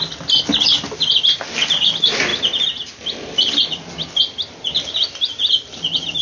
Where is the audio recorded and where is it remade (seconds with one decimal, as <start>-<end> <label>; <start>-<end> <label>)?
0.0-6.2 recorded